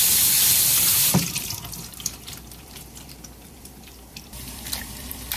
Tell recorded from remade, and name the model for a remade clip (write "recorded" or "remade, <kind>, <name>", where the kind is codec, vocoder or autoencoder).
remade, vocoder, BigVGAN v2